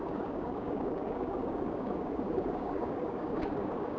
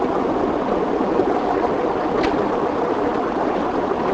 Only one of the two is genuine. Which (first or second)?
second